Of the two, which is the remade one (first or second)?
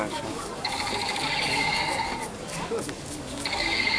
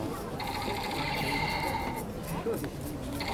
first